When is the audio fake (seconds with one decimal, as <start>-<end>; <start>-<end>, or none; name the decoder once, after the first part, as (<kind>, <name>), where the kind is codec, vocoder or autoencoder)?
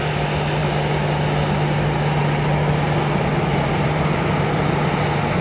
3.5-4.7 (vocoder, BigVGAN v2)